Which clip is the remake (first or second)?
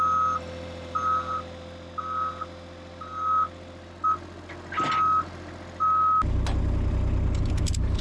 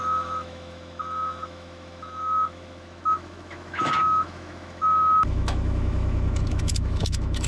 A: second